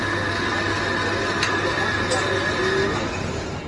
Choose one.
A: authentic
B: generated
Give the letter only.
A